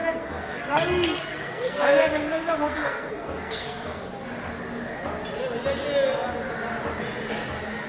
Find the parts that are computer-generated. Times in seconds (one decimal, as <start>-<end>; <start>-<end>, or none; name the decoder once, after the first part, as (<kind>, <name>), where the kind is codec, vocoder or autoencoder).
0.0-4.0 (codec, SNAC)